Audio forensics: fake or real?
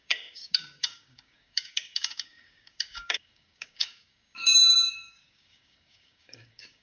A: fake